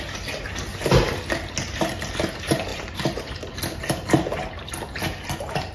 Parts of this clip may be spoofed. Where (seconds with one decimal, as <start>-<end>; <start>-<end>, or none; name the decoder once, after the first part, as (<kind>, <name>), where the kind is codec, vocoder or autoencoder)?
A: 0.7-1.2 (vocoder, BigVGAN v2); 2.7-4.1